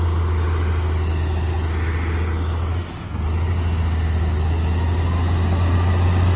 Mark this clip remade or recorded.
recorded